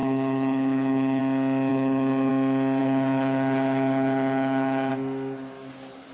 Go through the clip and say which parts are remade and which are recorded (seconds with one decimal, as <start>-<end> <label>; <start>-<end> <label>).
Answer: 0.0-1.2 remade; 1.2-1.7 recorded; 1.7-2.3 remade; 2.3-2.8 recorded; 2.8-4.9 remade; 4.9-6.1 recorded